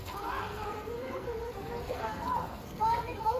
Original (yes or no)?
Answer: no